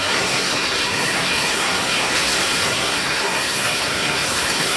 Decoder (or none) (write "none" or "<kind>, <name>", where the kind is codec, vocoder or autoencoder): codec, SNAC